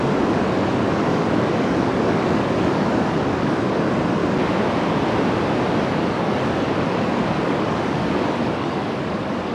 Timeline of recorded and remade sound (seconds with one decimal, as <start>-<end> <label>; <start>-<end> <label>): 0.0-4.2 remade; 4.2-5.9 recorded; 5.9-9.5 remade